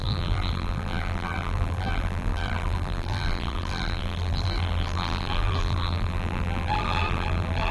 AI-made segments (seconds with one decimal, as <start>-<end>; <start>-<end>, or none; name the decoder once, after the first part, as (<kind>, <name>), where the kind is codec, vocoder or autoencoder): 0.0-7.7 (vocoder, BigVGAN v2)